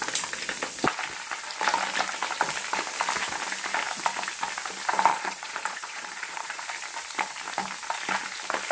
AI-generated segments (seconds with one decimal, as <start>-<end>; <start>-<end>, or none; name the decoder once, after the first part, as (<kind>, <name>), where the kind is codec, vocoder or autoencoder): 5.1-6.6 (vocoder, Vocos)